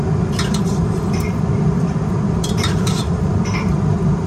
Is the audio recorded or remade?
remade